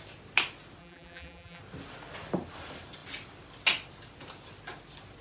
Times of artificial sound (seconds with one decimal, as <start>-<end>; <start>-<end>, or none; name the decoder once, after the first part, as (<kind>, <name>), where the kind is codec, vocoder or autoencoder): 0.8-1.6 (vocoder, BigVGAN v2)

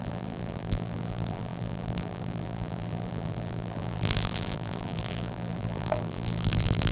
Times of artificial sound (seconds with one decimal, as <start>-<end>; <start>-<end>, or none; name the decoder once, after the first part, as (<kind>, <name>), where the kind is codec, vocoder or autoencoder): 0.0-6.9 (vocoder, BigVGAN v2)

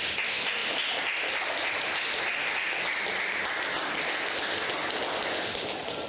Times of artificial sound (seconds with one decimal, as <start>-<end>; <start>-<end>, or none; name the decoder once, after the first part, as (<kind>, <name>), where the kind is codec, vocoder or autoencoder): none

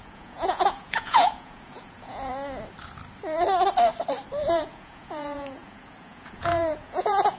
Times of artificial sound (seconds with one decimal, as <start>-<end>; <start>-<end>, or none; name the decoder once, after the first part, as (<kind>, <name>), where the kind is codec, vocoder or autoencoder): 0.0-2.3 (vocoder, Vocos); 4.4-7.4

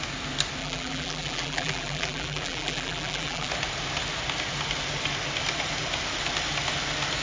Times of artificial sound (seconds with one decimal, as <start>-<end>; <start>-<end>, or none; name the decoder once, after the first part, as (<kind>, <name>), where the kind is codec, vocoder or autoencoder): 0.6-3.5 (vocoder, BigVGAN v2)

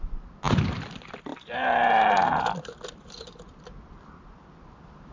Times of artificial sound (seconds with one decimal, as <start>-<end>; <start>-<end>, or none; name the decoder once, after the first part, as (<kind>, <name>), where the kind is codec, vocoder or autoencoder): none

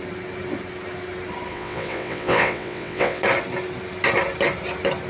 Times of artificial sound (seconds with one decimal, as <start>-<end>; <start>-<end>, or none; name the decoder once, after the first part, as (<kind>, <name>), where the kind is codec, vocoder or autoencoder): 1.5-3.2 (vocoder, WaveNeXt)